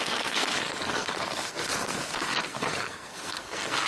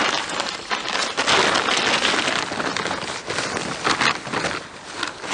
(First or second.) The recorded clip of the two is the second